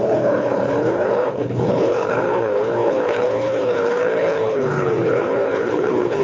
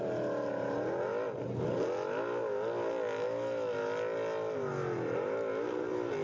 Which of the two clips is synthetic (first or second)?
first